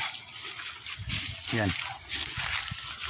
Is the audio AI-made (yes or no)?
no